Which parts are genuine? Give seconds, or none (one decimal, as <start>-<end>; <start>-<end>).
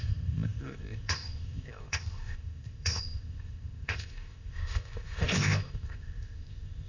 none